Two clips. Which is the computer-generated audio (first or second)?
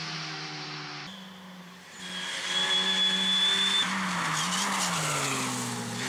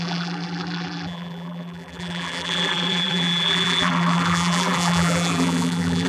second